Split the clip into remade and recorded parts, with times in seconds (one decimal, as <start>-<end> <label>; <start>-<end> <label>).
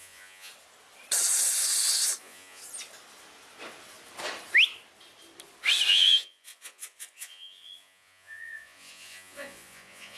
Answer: 0.0-0.5 remade; 0.5-2.2 recorded; 2.2-2.6 remade; 2.6-5.9 recorded; 5.9-10.2 remade